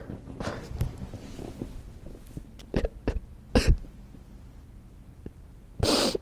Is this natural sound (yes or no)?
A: yes